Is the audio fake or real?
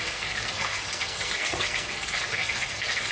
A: fake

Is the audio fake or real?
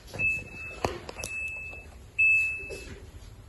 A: real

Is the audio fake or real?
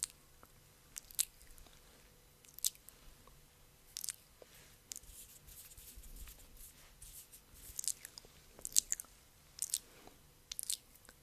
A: real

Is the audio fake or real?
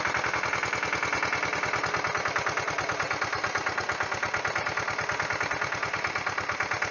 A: real